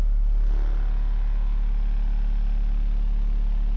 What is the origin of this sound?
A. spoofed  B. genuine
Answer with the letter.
B